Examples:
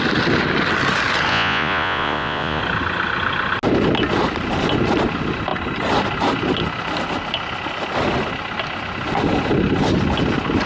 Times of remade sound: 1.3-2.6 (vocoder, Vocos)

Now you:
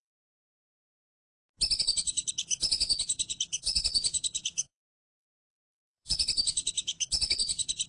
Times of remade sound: 0.0-0.4 (codec, HILCodec); 1.8-7.9

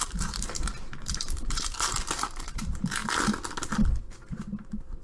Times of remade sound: 0.0-3.0 (vocoder, BigVGAN v2); 4.1-5.0